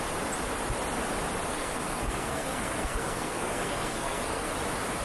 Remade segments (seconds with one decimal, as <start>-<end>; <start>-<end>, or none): 1.5-4.5